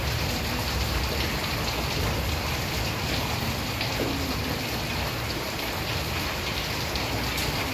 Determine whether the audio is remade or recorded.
recorded